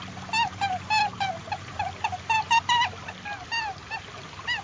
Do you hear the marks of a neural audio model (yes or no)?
no